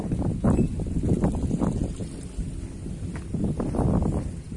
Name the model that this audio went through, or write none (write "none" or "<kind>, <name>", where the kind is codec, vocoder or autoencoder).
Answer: none